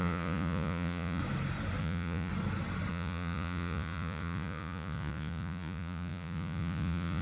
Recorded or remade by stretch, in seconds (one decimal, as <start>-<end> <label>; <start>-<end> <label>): 0.0-1.2 remade; 1.2-1.8 recorded; 1.8-2.3 remade; 2.3-2.9 recorded; 2.9-7.2 remade